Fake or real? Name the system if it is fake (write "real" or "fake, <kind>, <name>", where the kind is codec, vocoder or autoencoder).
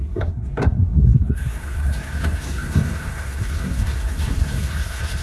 fake, codec, SNAC